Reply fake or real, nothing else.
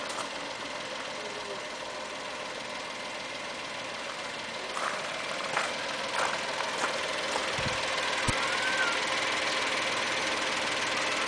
real